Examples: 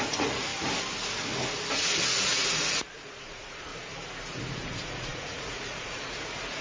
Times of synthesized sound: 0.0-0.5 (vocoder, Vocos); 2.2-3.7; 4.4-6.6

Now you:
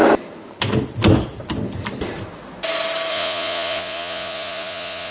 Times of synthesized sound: 3.1-5.1 (vocoder, Vocos)

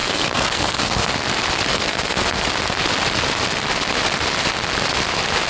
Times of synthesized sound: 0.0-1.1 (codec, SNAC); 1.7-2.5

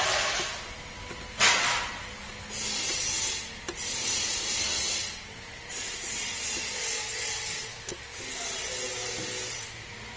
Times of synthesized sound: 7.7-8.2 (codec, DAC)

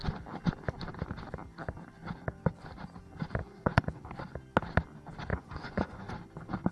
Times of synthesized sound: 3.4-4.1 (vocoder, Vocos); 5.3-6.1

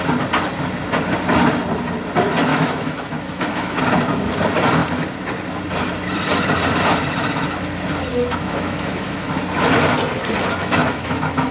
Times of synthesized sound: 2.5-3.8 (autoencoder, DAC-VAE); 8.1-9.4; 10.6-11.5

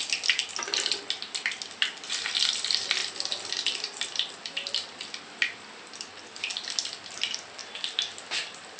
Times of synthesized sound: 3.0-7.0 (vocoder, BigVGAN v2); 7.6-8.2

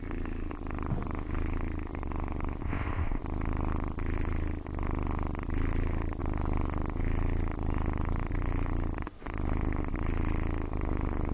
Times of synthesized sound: 2.6-3.2 (codec, ZipCodec)